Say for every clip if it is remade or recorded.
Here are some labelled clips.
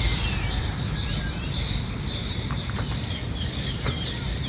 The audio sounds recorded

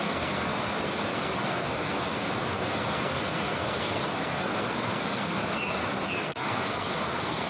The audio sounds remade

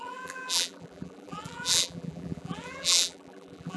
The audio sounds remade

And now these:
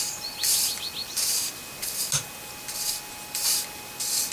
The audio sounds recorded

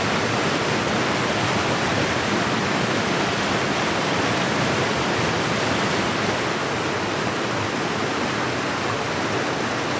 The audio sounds recorded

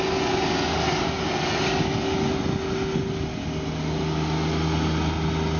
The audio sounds recorded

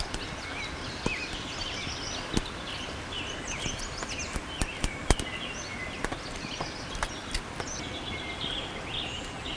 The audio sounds recorded